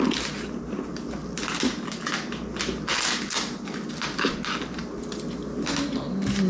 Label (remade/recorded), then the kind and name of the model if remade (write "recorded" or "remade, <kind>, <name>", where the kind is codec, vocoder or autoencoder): recorded